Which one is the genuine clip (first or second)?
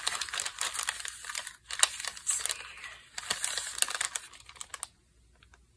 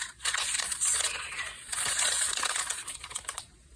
first